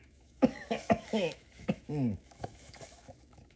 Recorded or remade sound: remade